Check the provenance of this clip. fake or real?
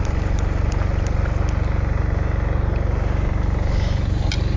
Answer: real